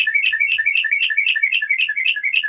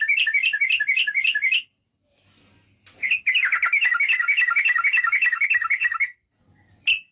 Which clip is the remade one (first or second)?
first